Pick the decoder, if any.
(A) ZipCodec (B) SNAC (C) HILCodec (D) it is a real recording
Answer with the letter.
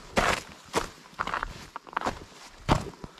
D